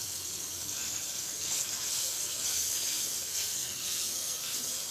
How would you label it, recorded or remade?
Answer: remade